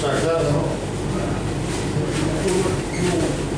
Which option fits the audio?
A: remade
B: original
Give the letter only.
A